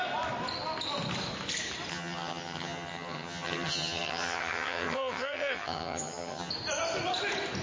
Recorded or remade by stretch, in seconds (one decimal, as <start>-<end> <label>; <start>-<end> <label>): 0.0-1.9 recorded; 1.9-6.5 remade; 6.5-7.6 recorded